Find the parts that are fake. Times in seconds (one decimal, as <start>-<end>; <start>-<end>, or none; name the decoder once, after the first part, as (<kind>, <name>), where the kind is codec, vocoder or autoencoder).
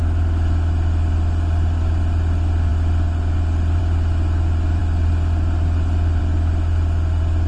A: none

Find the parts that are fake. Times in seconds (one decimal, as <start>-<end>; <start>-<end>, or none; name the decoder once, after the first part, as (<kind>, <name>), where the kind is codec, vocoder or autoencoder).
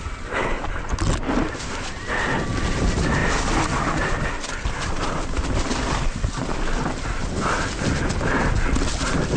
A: none